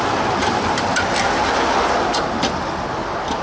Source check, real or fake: real